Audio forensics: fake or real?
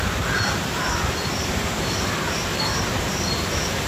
fake